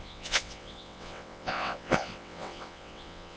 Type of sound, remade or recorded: remade